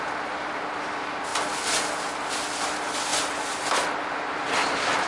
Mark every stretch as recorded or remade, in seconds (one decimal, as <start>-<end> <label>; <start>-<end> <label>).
0.0-5.1 recorded